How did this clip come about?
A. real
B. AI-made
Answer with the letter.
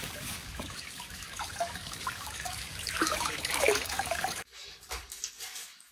B